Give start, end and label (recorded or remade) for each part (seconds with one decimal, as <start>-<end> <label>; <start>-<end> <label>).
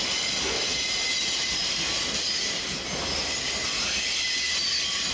0.0-5.1 recorded